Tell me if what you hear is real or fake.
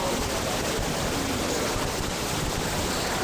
real